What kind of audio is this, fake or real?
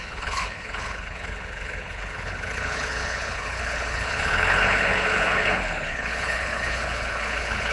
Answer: fake